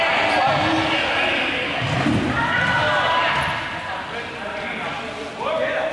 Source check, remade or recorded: recorded